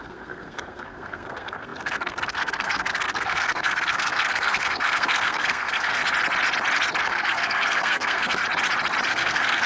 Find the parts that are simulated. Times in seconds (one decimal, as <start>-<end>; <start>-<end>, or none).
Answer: 0.0-6.0; 7.0-8.4; 9.1-9.7